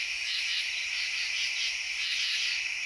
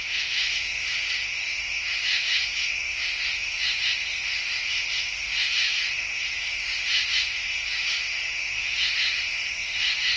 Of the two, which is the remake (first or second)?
second